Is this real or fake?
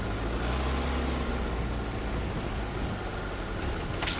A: real